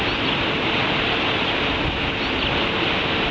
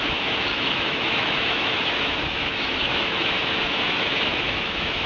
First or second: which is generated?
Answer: second